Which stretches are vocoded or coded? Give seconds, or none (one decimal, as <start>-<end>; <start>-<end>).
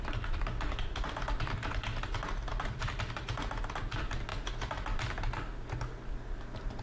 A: none